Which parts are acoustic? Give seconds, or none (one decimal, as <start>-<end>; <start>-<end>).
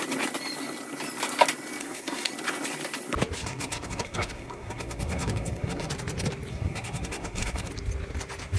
0.0-1.8; 2.3-3.4; 5.9-6.5; 7.7-8.6